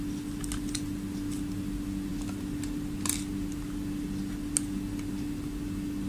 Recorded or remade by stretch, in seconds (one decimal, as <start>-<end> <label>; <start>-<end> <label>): 0.0-6.1 recorded